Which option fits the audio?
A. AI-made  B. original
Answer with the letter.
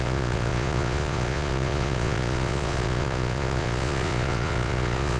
A